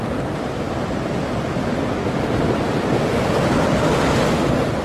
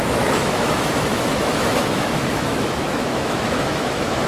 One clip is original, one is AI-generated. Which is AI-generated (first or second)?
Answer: second